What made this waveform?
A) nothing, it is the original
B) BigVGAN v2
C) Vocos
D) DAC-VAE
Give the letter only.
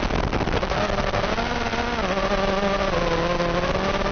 A